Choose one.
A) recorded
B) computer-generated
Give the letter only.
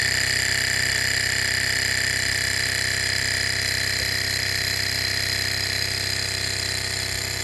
A